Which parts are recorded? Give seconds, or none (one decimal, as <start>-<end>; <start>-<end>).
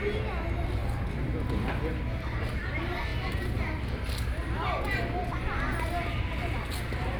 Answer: 0.0-7.2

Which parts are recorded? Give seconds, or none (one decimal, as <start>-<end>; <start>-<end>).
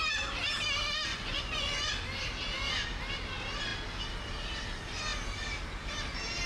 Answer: 0.0-1.1; 1.9-6.5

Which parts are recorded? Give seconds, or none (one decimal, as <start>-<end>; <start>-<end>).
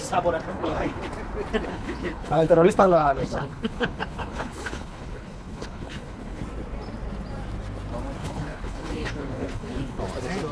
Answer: 0.0-0.5; 1.0-1.7; 6.4-8.2; 10.0-10.5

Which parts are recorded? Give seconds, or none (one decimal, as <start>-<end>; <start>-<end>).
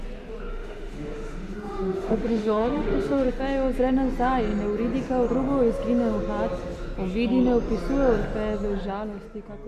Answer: 0.0-0.5; 3.4-9.7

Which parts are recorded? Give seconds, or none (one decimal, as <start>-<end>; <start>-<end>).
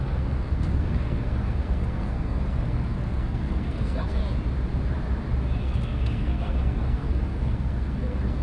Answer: 4.2-5.6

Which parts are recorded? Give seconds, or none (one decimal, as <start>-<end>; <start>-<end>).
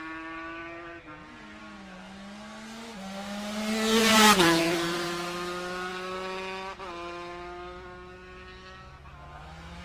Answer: 0.0-4.0; 4.6-9.8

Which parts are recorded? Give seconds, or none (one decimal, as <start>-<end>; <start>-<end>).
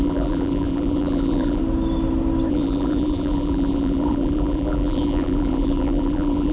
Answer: 1.6-2.5